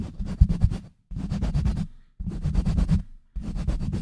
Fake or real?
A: real